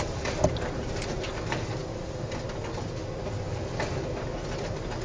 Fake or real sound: real